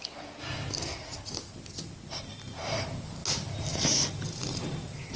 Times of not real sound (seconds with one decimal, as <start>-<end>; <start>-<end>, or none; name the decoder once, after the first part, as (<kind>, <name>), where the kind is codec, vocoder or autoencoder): none